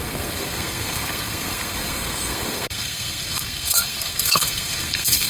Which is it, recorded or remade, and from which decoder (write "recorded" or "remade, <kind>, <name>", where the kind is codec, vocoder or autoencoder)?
remade, codec, SNAC